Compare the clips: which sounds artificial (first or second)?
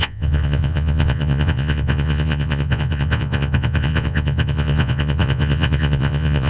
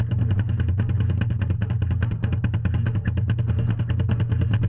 first